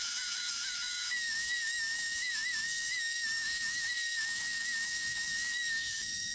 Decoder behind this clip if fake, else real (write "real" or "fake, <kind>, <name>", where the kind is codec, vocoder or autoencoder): fake, autoencoder, DAC-VAE